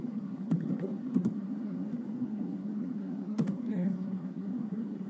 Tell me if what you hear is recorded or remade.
remade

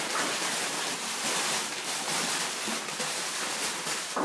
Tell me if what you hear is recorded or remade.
recorded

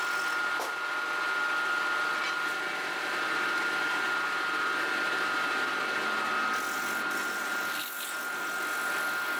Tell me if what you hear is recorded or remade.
recorded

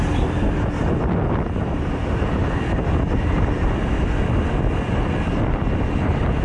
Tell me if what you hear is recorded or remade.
recorded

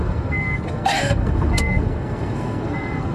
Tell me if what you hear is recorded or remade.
remade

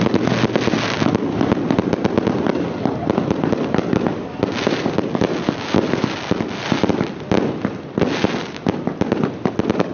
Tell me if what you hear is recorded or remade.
recorded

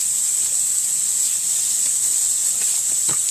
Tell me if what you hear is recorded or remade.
recorded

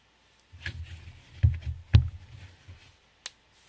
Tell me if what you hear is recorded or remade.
recorded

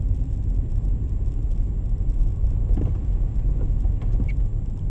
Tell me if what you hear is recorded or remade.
recorded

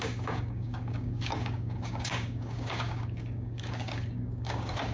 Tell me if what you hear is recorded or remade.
remade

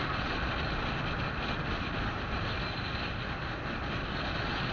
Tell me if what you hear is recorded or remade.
recorded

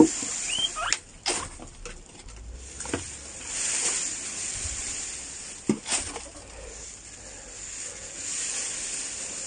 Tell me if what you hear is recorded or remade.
recorded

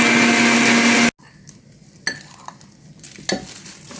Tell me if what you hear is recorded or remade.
recorded